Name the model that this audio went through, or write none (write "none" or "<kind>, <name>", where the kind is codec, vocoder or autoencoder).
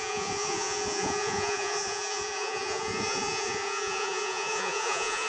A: vocoder, Vocos